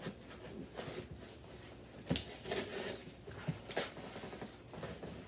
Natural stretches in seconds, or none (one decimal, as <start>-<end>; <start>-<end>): 0.0-5.3